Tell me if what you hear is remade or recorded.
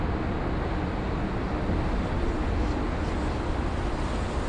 recorded